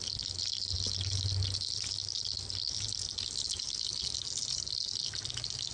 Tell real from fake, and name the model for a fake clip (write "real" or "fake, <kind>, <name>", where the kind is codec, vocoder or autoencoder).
real